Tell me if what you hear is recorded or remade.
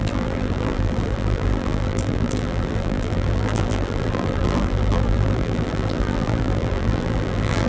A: remade